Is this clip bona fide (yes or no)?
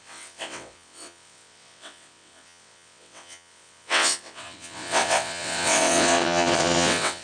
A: no